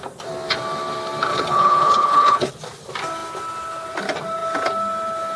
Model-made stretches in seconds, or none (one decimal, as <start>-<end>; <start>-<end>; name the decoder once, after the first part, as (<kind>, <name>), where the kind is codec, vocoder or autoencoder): 1.3-2.5 (codec, HILCodec)